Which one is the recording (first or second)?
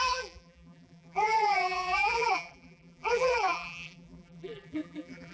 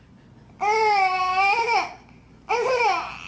second